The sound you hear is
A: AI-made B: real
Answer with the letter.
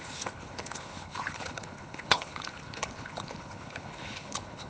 A